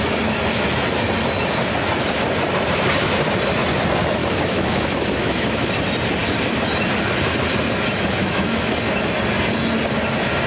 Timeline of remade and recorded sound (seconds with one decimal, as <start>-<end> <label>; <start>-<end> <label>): 0.0-4.2 recorded; 4.2-5.7 remade; 5.7-8.2 recorded; 8.2-8.7 remade; 8.7-10.5 recorded